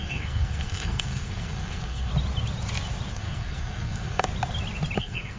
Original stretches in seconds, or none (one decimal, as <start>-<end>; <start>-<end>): 2.1-3.1; 4.3-5.0